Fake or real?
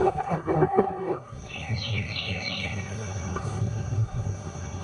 fake